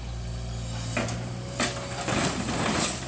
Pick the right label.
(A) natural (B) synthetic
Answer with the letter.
A